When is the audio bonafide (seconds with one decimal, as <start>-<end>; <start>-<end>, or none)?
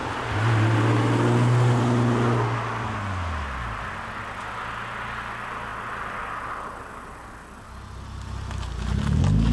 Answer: 0.0-9.5